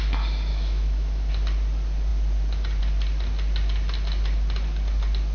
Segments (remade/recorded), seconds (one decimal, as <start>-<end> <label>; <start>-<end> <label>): 0.0-0.5 recorded; 0.5-1.3 remade; 1.3-5.3 recorded